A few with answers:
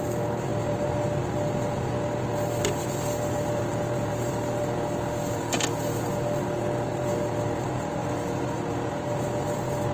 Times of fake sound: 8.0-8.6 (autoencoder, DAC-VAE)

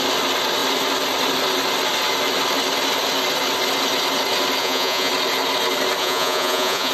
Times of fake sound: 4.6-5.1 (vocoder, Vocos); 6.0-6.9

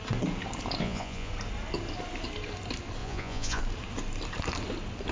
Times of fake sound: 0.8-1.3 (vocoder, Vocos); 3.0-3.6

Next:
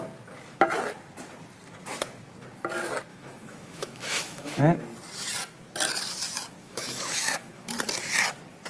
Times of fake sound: 3.1-4.6 (autoencoder, DAC-VAE); 6.6-7.7

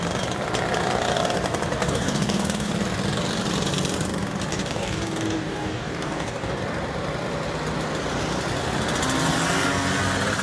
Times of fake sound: 1.8-2.7 (codec, DAC); 4.5-6.6

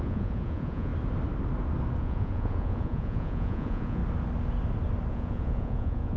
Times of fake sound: 0.0-0.9 (vocoder, Vocos); 2.0-4.0; 5.1-6.2